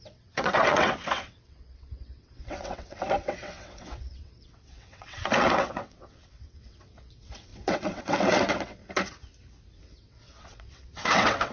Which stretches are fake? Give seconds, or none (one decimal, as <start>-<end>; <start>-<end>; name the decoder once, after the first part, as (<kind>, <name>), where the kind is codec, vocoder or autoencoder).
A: 0.0-8.8 (vocoder, WaveNeXt); 9.9-11.5